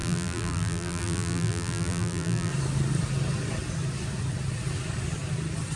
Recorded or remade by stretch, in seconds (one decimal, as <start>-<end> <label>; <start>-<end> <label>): 0.0-2.5 remade; 2.5-5.8 recorded